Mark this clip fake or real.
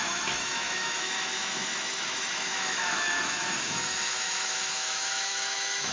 fake